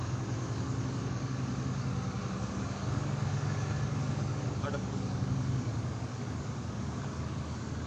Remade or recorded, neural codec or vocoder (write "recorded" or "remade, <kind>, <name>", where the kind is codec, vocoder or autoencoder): remade, codec, DAC